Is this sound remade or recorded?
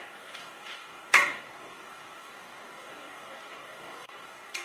remade